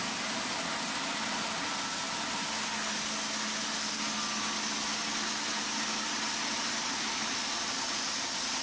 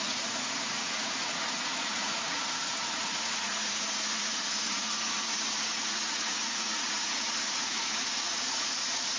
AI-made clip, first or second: second